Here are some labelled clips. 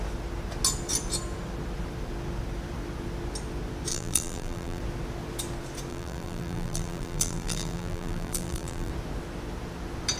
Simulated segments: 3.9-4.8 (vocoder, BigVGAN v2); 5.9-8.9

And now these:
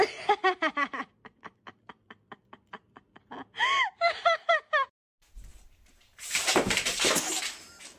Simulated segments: 5.5-7.4 (vocoder, BigVGAN v2)

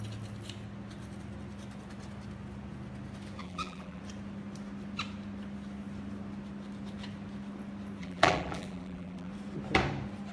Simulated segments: 3.4-4.0 (vocoder, BigVGAN v2); 8.0-9.3

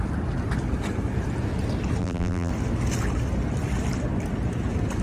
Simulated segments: 2.0-2.5 (vocoder, BigVGAN v2)

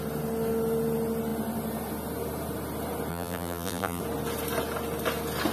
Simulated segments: 3.1-4.0 (vocoder, BigVGAN v2)

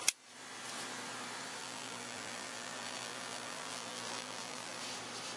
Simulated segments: 1.6-4.8 (vocoder, BigVGAN v2)

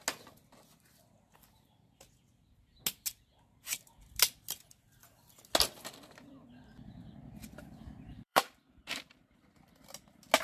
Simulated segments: 8.1-9.6 (vocoder, BigVGAN v2)

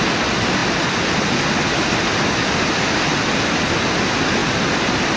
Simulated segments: none